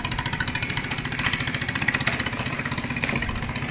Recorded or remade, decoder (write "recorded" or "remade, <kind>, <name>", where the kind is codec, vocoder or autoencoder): recorded